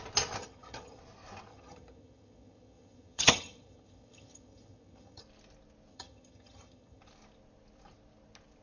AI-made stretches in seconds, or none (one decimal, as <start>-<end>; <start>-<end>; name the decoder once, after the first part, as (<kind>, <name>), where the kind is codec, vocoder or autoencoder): 0.4-1.0 (vocoder, HiFi-GAN); 1.5-5.2; 5.9-7.0